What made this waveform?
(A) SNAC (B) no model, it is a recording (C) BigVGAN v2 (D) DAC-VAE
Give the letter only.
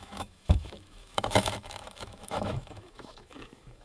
D